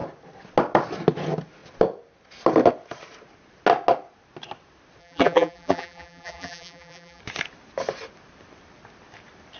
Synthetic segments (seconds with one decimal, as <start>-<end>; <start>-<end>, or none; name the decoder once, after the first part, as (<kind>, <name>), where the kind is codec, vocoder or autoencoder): 5.0-7.2 (vocoder, BigVGAN v2)